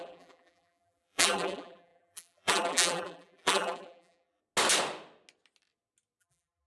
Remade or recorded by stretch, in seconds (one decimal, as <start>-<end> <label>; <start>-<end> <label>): 0.0-4.4 remade; 4.4-6.2 recorded; 6.2-6.7 remade